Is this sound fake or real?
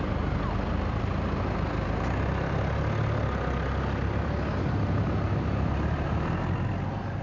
real